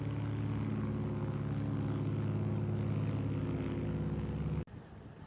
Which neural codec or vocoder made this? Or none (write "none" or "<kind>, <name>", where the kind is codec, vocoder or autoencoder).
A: none